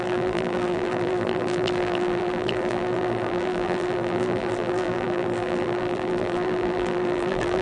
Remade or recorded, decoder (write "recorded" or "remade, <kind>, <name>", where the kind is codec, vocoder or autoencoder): remade, vocoder, BigVGAN v2